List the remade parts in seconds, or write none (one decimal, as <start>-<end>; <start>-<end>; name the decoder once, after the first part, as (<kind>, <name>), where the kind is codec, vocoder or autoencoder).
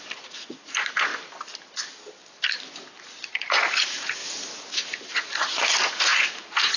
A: 0.0-1.1 (vocoder, Vocos); 3.0-6.8